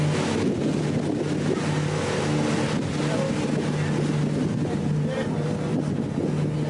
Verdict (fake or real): real